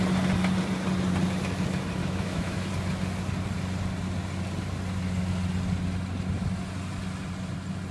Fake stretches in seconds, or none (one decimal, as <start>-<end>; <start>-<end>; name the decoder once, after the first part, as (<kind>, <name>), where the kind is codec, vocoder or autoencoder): 2.0-2.7 (autoencoder, DAC-VAE)